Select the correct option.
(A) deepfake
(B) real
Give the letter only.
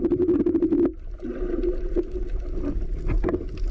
B